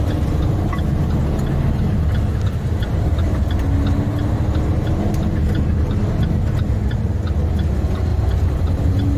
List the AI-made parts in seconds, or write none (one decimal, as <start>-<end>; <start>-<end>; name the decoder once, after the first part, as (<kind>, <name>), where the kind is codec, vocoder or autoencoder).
8.1-9.2 (vocoder, BigVGAN v2)